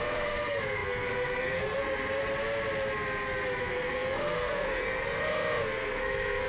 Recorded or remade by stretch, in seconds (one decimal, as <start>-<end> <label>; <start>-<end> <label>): 0.0-2.2 remade; 2.2-3.6 recorded; 3.6-6.5 remade